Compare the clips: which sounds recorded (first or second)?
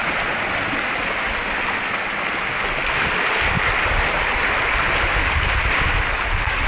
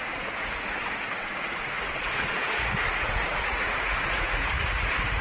first